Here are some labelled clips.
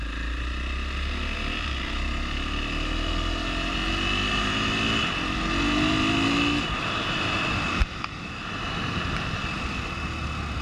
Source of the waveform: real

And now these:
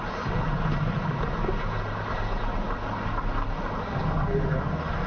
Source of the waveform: real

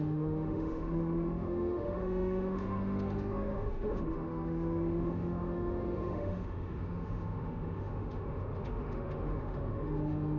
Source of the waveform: fake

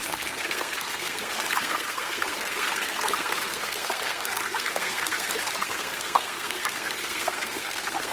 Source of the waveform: fake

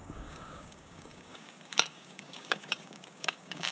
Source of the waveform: fake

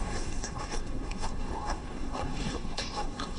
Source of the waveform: fake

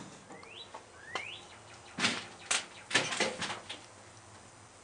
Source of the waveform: real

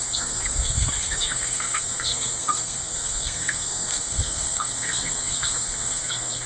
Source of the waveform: fake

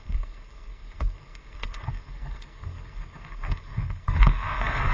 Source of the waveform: fake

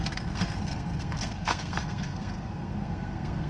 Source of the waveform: fake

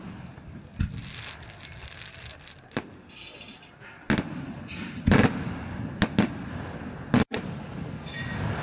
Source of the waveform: real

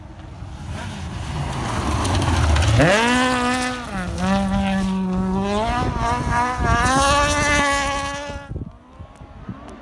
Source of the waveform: real